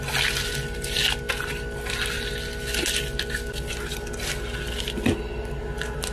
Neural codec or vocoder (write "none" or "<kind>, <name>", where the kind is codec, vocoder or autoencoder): none